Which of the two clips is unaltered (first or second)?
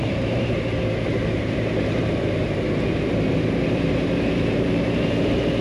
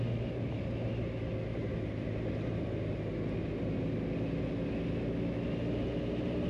second